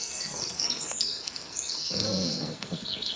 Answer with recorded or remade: remade